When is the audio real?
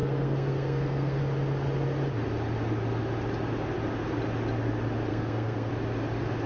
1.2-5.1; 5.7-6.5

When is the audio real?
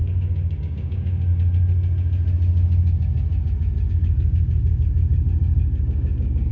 1.3-3.9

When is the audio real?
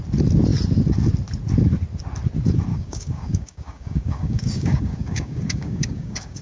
0.0-2.7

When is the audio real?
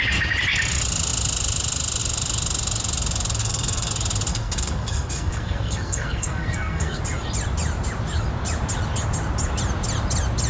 0.0-3.4; 3.9-4.3; 7.0-10.5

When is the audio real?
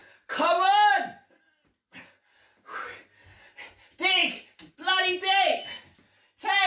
0.0-6.7